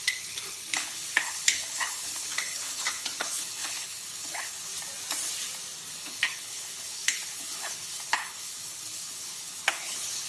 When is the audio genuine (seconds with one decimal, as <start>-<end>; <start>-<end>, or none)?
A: 4.7-5.9

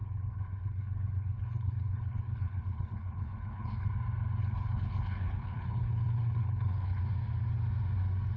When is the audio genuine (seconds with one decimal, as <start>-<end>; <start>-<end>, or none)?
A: 3.9-4.4; 7.0-8.4

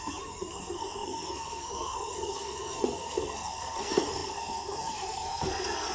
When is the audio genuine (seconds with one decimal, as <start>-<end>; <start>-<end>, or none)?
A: none

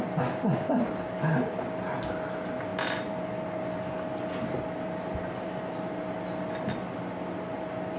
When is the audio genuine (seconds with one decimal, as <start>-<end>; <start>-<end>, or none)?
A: 0.0-8.0

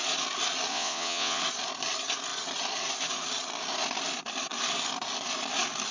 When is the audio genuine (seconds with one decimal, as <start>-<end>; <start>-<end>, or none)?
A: 0.0-0.7; 1.4-5.9

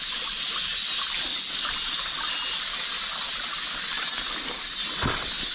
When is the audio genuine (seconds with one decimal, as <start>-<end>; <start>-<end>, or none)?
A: 0.0-5.5

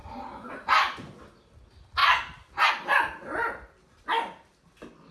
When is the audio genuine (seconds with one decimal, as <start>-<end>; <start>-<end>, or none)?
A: 0.0-5.1

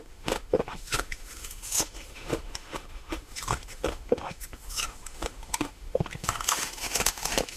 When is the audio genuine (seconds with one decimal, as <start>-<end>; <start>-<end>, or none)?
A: none